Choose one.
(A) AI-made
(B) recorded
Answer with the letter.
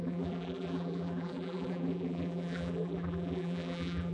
A